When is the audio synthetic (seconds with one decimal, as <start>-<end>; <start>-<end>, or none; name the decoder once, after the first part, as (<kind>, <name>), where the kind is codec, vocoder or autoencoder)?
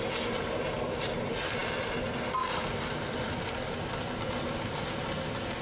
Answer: none